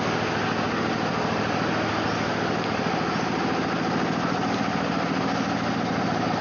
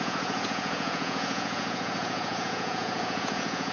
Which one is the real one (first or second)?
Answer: first